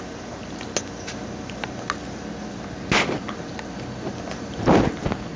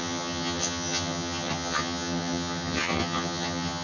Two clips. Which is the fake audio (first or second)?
second